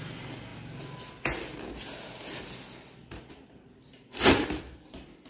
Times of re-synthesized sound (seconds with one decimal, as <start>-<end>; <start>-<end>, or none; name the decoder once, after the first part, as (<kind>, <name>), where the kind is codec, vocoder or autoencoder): none